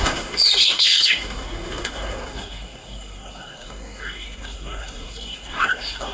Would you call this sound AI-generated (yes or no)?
yes